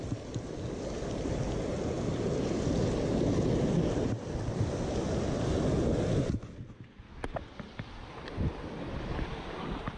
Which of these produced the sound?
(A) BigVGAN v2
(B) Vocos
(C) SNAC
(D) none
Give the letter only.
D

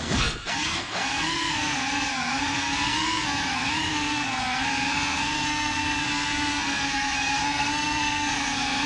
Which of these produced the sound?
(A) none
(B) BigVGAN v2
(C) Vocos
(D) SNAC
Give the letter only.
D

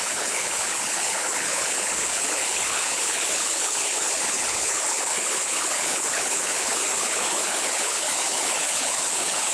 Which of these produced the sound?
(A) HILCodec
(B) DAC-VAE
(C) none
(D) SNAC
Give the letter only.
A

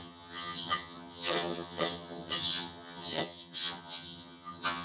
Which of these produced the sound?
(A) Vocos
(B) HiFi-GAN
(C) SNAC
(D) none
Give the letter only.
B